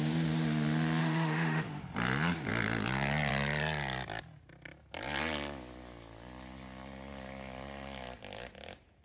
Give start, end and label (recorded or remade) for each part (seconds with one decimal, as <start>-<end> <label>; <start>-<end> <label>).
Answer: 0.0-1.0 recorded; 1.0-1.8 remade; 1.8-9.0 recorded